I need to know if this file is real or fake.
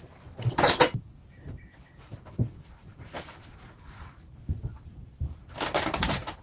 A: fake